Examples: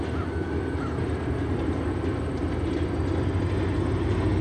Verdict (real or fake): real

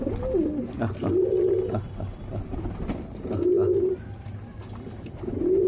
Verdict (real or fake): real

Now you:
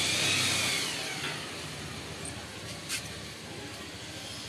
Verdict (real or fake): real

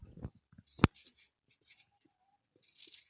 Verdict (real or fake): real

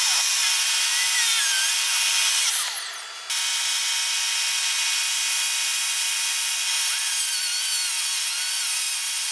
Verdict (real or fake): real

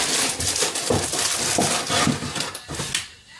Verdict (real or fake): real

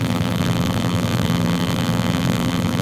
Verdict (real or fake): fake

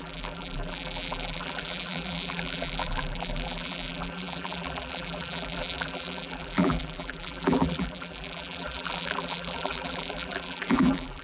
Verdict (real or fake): fake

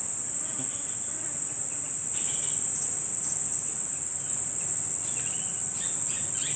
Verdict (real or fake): real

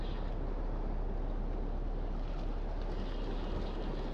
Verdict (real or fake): real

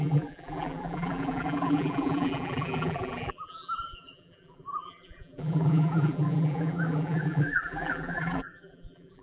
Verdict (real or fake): fake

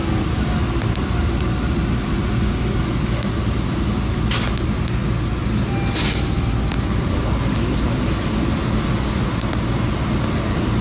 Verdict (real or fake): real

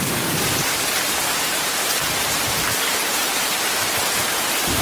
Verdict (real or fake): fake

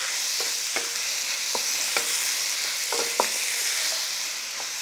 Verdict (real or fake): real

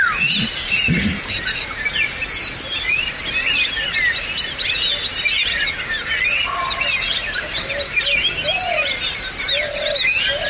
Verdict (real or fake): real